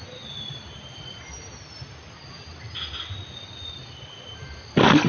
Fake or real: real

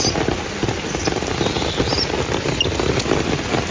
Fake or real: real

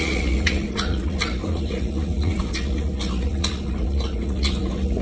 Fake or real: fake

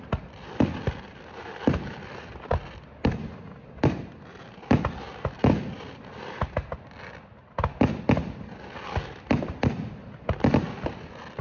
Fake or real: real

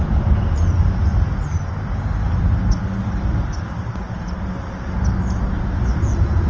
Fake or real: real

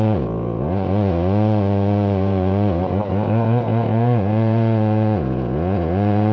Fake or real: fake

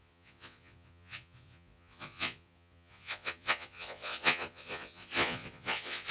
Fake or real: fake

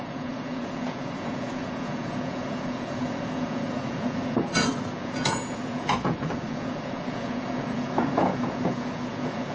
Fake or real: fake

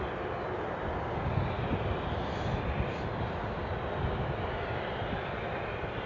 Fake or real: real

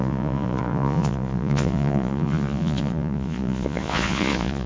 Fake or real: fake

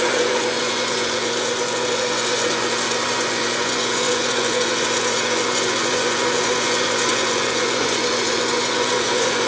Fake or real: fake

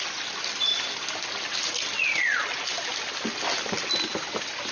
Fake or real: real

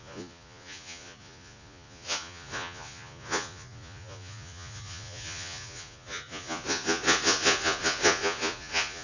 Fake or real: fake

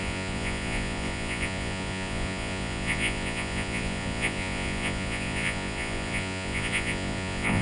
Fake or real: fake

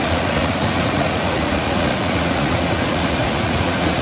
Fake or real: fake